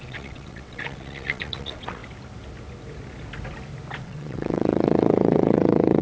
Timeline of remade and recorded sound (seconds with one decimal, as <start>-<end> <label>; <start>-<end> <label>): 0.0-2.0 remade; 2.0-4.0 recorded; 4.0-6.0 remade